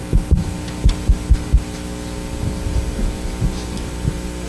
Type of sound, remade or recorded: recorded